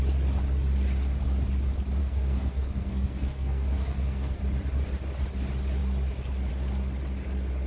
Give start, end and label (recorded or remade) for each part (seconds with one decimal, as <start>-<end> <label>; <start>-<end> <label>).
0.0-2.0 recorded; 2.0-4.4 remade; 4.4-7.7 recorded